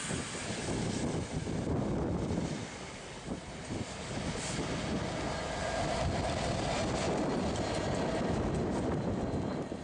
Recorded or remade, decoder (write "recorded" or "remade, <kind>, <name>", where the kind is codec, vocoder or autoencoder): recorded